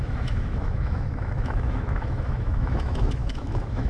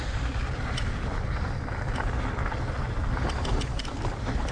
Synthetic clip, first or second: first